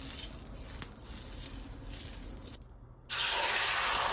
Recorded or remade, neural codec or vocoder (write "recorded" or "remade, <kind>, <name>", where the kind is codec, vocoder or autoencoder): recorded